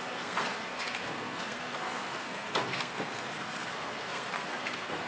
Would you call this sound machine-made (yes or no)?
yes